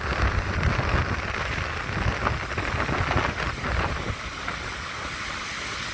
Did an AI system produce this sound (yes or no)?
no